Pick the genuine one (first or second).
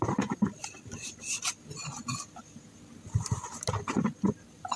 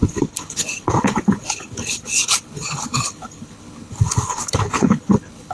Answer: first